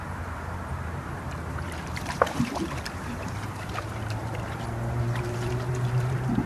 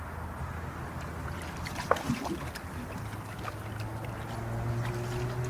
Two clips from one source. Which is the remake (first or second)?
first